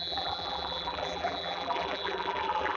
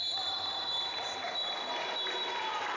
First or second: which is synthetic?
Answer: first